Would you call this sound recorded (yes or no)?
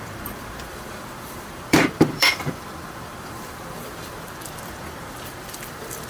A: no